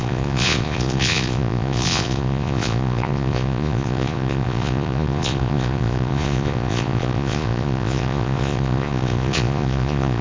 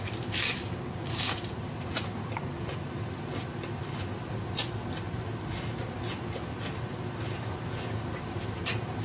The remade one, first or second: first